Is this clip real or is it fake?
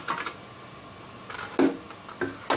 real